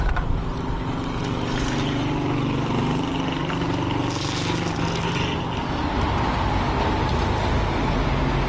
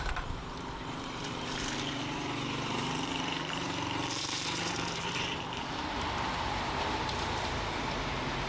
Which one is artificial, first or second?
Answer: second